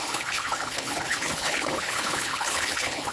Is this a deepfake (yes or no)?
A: yes